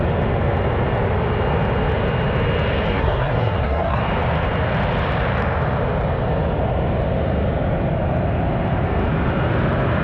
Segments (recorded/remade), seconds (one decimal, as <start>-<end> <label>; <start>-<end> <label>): 0.0-2.9 recorded; 2.9-4.0 remade; 4.0-10.0 recorded